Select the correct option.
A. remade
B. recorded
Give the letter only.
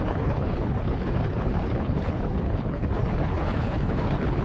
A